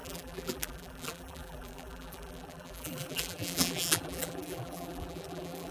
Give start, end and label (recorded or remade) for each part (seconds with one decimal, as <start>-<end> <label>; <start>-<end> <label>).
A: 0.0-5.7 remade